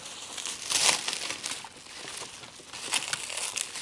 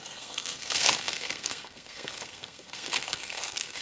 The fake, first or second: second